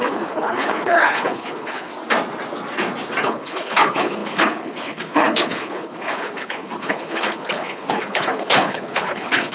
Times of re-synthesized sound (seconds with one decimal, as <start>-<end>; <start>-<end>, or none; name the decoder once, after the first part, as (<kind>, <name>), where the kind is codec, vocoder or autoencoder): 0.0-1.9 (codec, HILCodec); 3.2-9.5

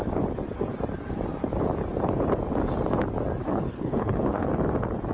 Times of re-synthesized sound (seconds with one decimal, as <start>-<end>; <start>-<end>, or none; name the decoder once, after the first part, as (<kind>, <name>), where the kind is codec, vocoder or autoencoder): 3.4-4.5 (codec, HILCodec)

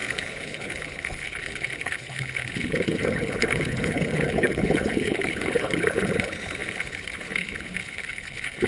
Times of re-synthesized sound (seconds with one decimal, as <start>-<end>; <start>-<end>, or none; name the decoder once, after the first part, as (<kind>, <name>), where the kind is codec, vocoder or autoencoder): 0.0-8.7 (codec, HILCodec)

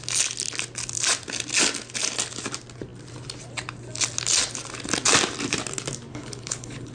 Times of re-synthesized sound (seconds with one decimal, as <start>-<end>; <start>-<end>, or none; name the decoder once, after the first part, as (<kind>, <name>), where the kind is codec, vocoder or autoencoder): 6.1-6.9 (codec, HILCodec)